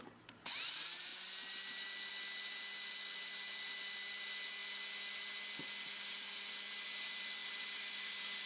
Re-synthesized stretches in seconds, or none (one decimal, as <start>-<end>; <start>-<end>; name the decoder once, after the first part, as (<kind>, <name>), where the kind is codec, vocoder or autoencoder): 7.4-8.0 (vocoder, BigVGAN v2)